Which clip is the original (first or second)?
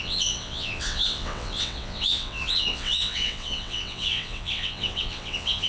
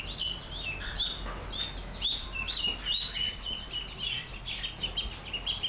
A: second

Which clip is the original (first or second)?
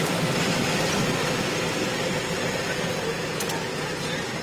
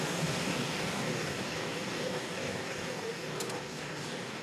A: first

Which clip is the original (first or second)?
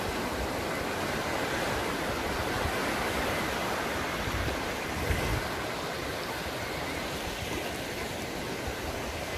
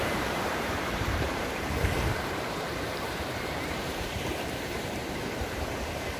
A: first